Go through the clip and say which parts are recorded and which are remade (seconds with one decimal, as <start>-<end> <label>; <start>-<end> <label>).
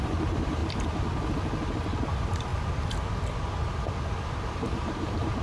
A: 0.0-0.6 remade; 0.6-2.0 recorded; 2.0-2.5 remade; 2.5-4.4 recorded; 4.4-5.4 remade